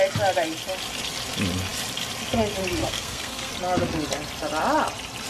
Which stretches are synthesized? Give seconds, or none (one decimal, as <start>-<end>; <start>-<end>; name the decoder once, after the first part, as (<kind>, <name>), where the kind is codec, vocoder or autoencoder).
2.8-3.5 (codec, SNAC)